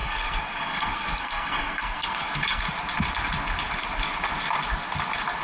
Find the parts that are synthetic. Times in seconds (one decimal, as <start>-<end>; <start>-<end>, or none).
0.0-2.6